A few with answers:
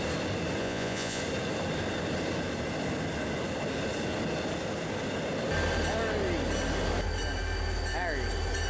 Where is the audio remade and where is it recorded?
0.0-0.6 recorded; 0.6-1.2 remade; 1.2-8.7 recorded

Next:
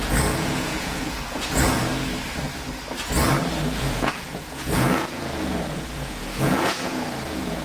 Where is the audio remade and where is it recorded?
0.0-1.9 remade; 1.9-3.7 recorded; 3.7-7.6 remade

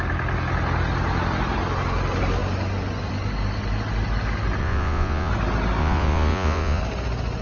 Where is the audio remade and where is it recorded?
0.0-4.6 recorded; 4.6-5.3 remade; 5.3-5.8 recorded; 5.8-6.8 remade; 6.8-7.4 recorded

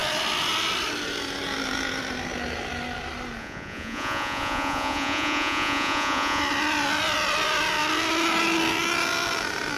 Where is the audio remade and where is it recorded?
0.0-3.4 recorded; 3.4-6.4 remade; 6.4-9.8 recorded